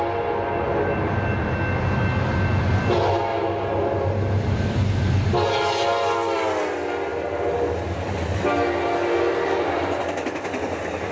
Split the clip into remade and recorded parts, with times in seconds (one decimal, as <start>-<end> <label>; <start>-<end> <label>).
0.0-11.1 recorded